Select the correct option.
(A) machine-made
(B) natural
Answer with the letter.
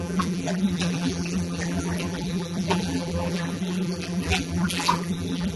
A